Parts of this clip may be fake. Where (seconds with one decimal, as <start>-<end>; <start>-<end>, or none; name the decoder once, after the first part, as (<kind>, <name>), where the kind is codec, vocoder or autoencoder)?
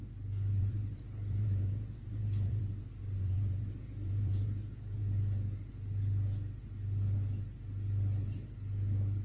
0.6-2.6 (vocoder, Vocos); 3.0-5.0